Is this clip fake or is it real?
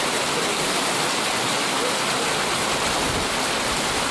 fake